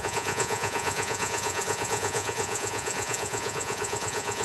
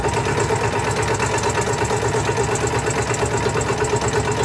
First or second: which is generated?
first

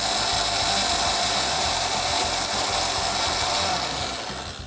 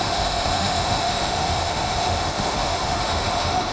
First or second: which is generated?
second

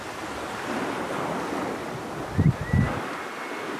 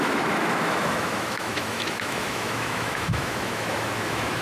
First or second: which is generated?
second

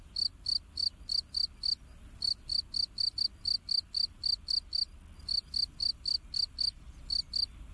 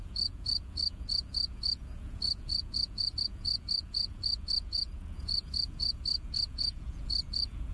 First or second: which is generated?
second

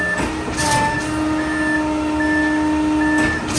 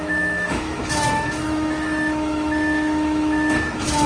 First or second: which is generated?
second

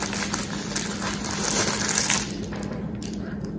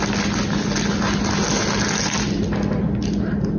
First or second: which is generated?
first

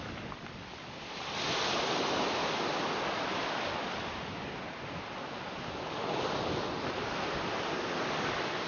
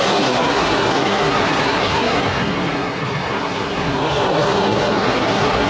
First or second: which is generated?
second